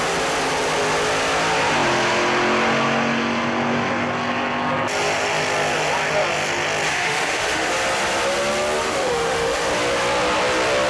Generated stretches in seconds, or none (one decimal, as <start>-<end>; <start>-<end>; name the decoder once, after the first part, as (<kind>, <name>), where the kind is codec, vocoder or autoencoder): 6.9-7.7 (autoencoder, DAC-VAE); 8.8-9.7